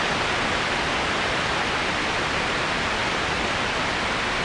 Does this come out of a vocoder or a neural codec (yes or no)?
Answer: no